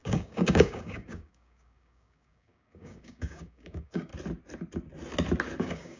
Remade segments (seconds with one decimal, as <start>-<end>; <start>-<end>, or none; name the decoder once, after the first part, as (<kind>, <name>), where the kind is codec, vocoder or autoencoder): 0.0-4.1 (codec, DAC); 5.6-6.0